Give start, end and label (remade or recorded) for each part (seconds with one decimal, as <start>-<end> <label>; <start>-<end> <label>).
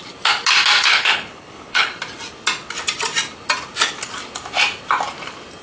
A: 0.0-0.9 recorded; 0.9-1.9 remade; 1.9-5.6 recorded